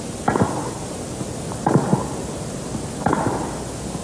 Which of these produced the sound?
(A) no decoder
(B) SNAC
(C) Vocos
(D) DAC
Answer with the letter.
A